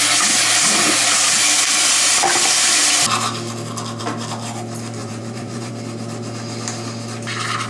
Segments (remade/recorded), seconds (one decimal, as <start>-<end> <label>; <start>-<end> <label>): 0.0-5.0 recorded; 5.0-5.7 remade; 5.7-7.7 recorded